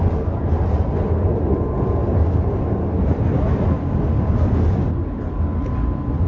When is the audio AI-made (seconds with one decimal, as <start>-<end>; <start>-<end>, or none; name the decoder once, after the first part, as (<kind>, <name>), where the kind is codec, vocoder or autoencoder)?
none